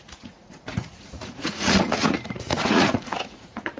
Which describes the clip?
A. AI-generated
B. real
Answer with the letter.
A